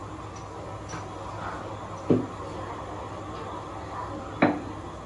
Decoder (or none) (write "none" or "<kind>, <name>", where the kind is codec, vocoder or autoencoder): none